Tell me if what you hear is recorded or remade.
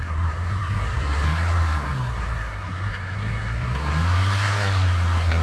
remade